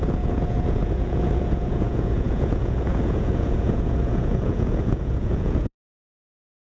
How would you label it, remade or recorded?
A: remade